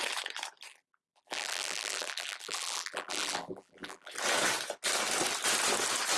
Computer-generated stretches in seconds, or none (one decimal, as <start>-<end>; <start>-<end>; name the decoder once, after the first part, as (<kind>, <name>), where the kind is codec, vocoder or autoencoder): 0.7-4.1 (vocoder, BigVGAN v2)